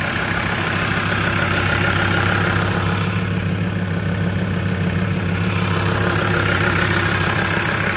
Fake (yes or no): yes